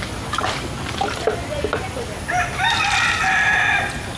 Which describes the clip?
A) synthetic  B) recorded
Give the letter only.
B